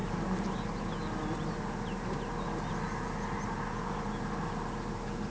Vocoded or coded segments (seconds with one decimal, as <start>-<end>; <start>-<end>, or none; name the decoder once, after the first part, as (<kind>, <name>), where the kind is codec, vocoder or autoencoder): none